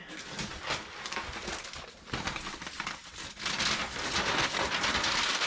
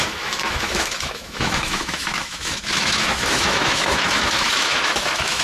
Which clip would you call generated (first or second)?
second